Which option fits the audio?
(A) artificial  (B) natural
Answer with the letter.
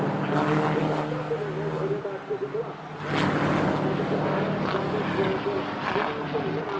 B